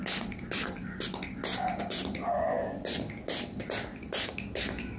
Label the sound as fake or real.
real